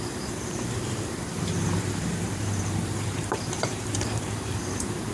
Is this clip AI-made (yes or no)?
yes